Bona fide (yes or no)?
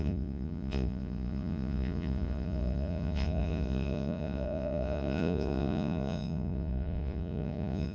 no